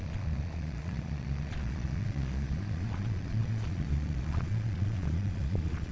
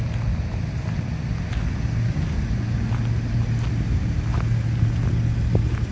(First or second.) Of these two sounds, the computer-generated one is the first